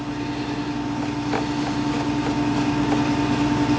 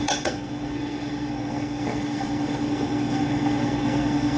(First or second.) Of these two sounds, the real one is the first